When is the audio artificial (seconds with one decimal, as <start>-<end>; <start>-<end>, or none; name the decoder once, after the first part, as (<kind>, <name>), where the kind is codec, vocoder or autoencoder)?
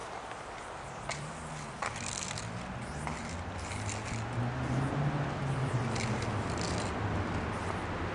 0.0-1.5 (vocoder, BigVGAN v2)